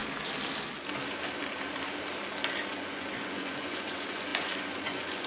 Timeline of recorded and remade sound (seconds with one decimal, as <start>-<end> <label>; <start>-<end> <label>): 0.0-2.7 recorded; 2.7-5.3 remade